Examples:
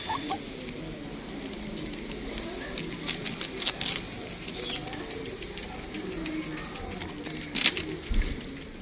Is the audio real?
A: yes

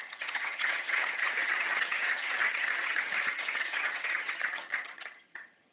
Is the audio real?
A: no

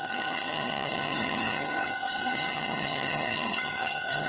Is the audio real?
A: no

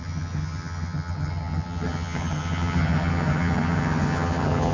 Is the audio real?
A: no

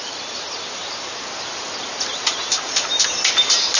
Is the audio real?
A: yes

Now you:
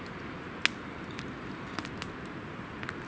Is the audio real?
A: yes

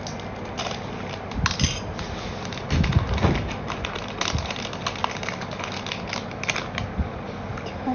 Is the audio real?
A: yes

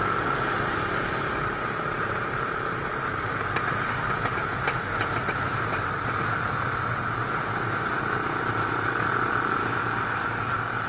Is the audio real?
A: yes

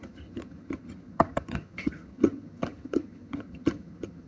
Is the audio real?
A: no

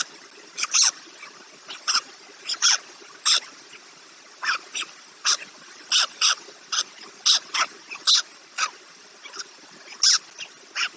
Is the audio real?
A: yes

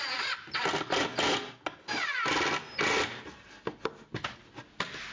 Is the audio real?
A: yes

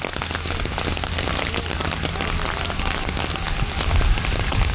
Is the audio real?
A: yes